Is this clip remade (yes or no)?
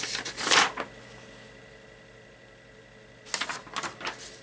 no